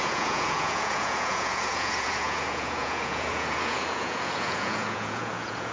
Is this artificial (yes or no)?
yes